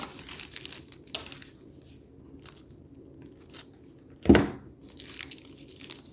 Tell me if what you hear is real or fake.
real